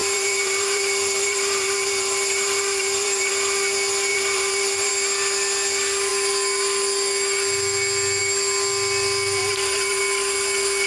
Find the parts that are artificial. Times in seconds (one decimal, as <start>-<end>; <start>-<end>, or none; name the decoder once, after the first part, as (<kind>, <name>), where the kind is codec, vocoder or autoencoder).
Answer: 0.0-3.3 (vocoder, BigVGAN v2); 4.1-4.9; 9.4-10.0